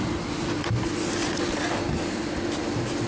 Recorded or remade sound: recorded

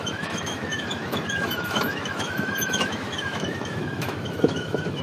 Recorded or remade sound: remade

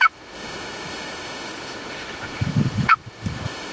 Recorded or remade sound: remade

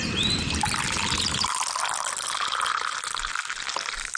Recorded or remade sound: recorded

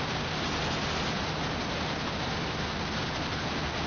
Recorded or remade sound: recorded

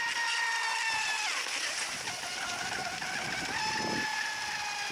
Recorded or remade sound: recorded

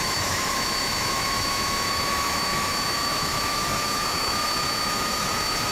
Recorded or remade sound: remade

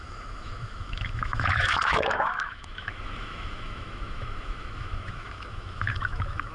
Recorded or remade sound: remade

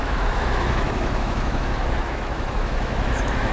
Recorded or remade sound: remade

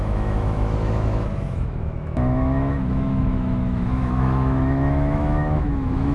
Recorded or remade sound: remade